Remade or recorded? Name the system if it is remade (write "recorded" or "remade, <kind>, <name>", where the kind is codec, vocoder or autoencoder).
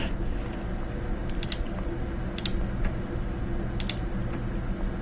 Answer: recorded